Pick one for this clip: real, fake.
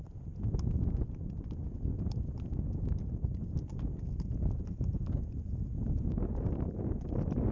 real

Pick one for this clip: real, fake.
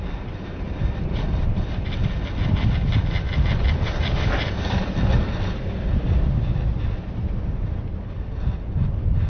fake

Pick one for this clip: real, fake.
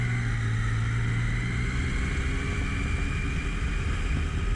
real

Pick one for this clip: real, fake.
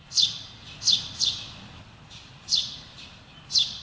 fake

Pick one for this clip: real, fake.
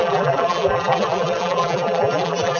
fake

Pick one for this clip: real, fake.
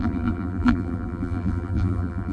fake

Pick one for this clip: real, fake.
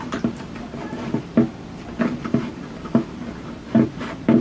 fake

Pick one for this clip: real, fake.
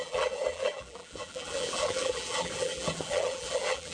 fake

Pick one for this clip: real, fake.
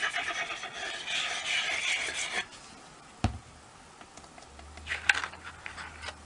real